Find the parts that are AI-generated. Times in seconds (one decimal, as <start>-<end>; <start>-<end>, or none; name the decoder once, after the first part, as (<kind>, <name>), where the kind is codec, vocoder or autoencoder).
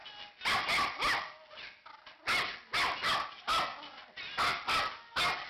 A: none